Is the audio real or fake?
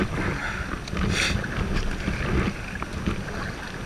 real